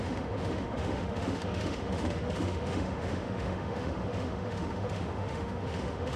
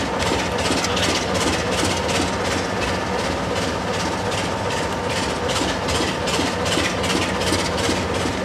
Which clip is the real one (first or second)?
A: second